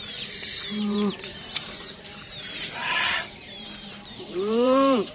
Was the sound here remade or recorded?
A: remade